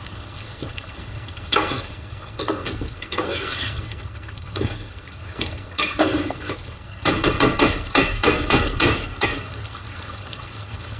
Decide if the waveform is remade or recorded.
remade